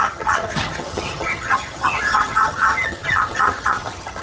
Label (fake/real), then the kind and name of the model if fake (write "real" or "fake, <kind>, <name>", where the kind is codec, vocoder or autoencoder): fake, vocoder, HiFi-GAN